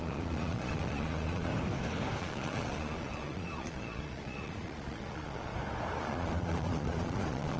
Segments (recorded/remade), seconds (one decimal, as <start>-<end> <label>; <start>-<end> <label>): 0.0-1.5 remade; 1.5-2.2 recorded; 2.2-5.5 remade; 5.5-6.0 recorded; 6.0-7.6 remade